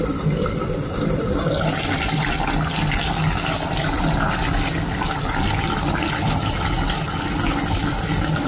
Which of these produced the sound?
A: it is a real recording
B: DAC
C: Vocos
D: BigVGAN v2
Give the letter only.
A